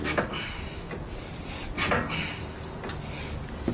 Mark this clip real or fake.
real